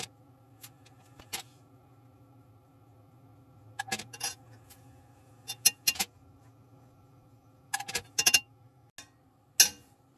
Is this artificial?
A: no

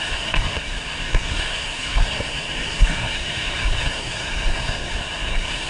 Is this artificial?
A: yes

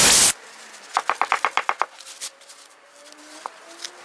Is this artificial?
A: no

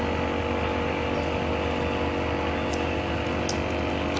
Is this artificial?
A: no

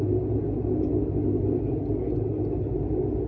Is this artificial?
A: no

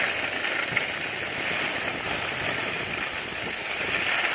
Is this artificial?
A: no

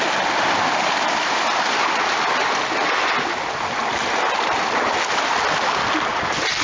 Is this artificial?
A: no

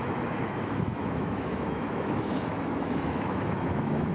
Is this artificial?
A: yes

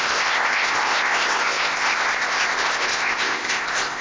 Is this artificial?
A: yes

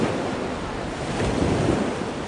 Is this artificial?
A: no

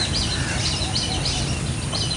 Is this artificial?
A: no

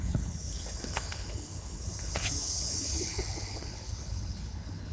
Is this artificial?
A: yes